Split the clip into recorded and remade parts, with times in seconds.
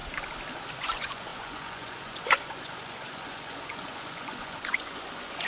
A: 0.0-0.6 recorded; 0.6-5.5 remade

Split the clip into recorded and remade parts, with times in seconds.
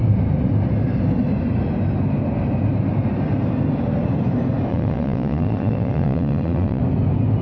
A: 0.0-4.7 recorded; 4.7-6.8 remade; 6.8-7.4 recorded